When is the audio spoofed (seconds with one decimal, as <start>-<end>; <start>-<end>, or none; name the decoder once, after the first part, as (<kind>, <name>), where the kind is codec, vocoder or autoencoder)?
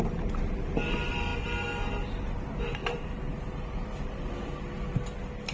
2.8-4.3 (vocoder, BigVGAN v2)